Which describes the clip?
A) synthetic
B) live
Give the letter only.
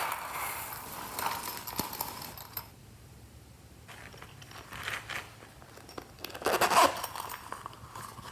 B